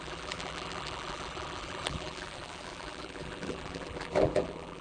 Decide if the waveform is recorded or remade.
remade